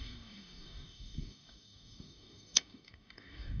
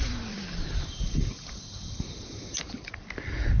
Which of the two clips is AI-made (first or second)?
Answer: first